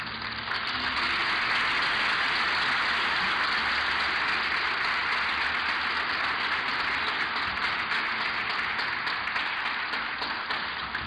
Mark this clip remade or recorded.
recorded